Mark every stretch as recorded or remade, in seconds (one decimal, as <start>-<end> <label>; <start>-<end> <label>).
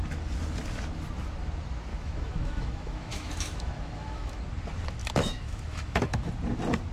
0.0-1.9 recorded; 1.9-4.4 remade; 4.4-5.0 recorded; 5.0-6.3 remade; 6.3-6.9 recorded